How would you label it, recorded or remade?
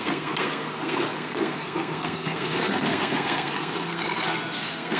remade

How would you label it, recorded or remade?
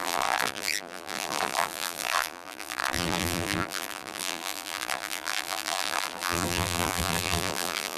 remade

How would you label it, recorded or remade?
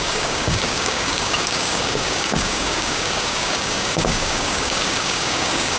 remade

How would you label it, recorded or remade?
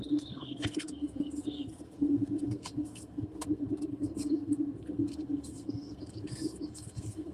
remade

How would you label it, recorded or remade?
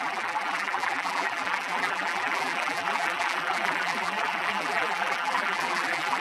remade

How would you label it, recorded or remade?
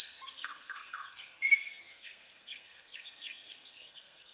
remade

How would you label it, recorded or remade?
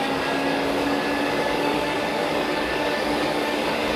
remade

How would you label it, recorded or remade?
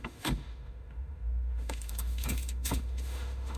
remade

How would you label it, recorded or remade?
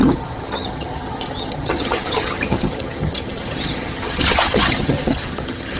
remade